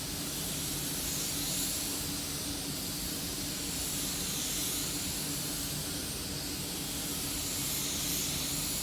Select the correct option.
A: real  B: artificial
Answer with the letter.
A